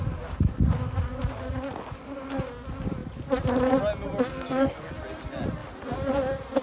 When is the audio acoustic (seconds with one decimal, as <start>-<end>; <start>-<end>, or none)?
0.0-4.3; 4.9-6.6

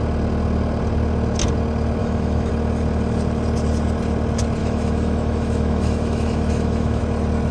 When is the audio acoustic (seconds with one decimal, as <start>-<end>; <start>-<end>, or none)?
0.0-2.0; 2.5-4.6; 7.0-7.5

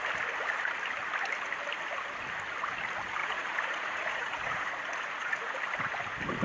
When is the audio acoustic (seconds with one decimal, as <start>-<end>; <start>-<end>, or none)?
0.0-3.2; 5.6-6.4

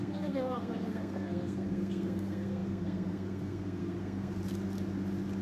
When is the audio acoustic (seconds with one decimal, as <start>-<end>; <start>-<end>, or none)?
4.4-5.4